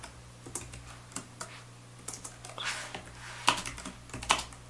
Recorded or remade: recorded